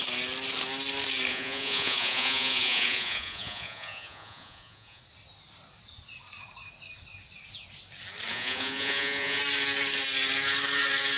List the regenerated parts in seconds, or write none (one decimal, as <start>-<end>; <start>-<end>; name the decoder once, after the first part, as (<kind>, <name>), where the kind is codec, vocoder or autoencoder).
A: 1.3-5.0 (vocoder, Vocos); 8.3-9.4